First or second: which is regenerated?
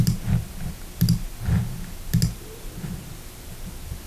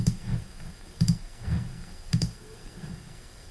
second